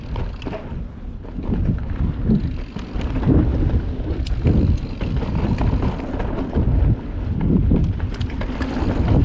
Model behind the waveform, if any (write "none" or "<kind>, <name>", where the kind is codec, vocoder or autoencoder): none